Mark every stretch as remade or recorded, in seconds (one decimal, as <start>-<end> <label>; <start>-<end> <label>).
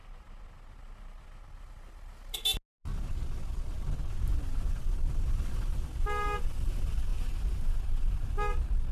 0.0-8.9 recorded